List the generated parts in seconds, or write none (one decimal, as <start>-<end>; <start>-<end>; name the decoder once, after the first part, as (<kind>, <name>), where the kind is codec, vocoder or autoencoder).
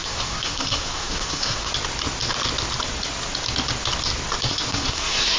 0.0-1.7 (codec, SNAC); 4.5-5.4